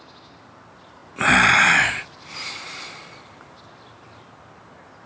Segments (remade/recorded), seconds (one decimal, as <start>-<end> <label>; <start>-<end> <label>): 0.0-5.1 recorded